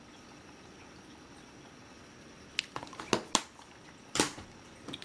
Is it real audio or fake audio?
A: real